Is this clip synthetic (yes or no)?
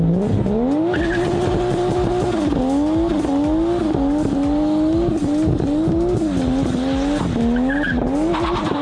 no